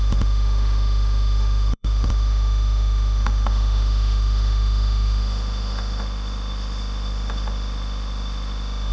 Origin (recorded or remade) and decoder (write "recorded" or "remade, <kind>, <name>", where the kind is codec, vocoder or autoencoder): remade, autoencoder, DAC-VAE